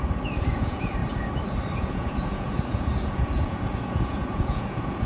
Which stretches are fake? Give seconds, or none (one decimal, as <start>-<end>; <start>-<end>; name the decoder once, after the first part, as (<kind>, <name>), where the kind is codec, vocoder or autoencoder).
0.0-1.0 (vocoder, Vocos); 1.8-5.1